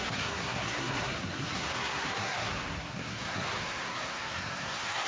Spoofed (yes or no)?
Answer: yes